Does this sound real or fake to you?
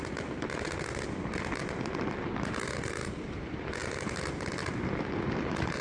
real